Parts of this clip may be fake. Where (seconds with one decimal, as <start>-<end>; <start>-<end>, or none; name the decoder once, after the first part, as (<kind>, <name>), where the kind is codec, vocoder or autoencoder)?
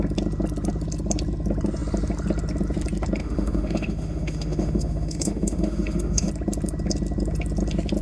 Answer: 3.2-6.3 (autoencoder, DAC-VAE)